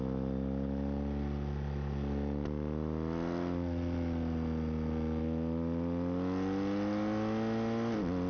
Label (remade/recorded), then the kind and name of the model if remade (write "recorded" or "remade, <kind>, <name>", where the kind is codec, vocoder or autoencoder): recorded